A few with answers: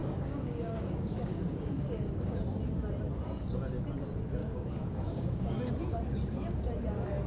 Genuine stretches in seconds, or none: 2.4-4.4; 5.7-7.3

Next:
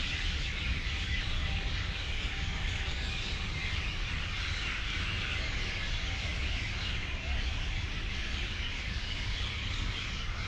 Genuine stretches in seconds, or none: none

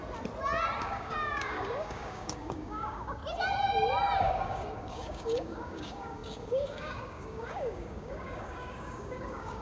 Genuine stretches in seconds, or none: 0.0-0.8; 3.2-4.2

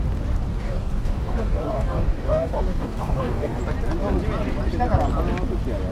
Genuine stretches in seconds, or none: 0.0-0.5; 3.6-5.9

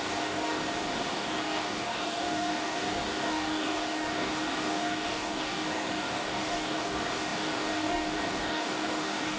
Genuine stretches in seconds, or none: 0.6-1.1

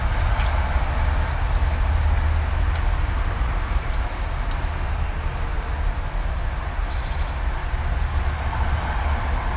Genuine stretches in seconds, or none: 0.0-9.6

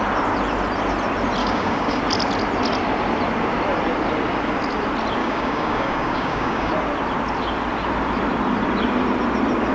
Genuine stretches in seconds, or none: 0.0-1.4; 2.0-5.2; 6.7-9.7

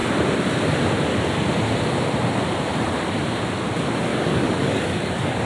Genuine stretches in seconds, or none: 0.0-4.1